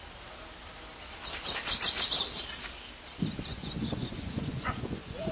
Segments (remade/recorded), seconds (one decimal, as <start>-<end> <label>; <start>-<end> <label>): 0.0-3.5 recorded; 3.5-5.3 remade